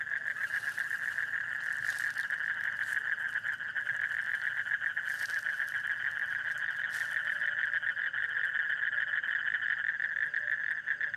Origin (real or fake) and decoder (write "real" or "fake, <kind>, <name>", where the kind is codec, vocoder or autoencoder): real